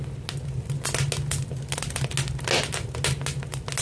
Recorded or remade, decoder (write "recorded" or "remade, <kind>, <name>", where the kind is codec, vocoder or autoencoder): recorded